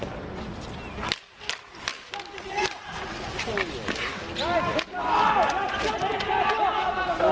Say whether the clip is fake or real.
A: real